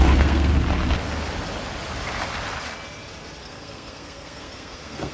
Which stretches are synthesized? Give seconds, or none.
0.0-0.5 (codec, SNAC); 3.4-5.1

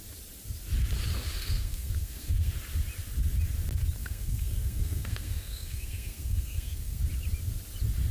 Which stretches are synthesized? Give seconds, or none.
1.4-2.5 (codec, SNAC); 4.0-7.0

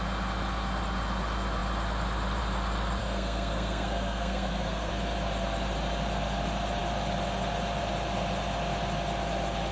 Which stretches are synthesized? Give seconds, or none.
3.0-4.9 (codec, SNAC)